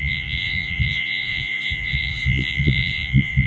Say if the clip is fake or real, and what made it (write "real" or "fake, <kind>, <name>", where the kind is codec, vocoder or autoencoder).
fake, vocoder, Vocos